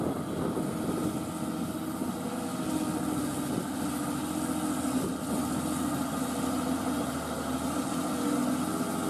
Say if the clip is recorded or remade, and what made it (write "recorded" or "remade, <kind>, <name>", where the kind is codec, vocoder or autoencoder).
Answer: recorded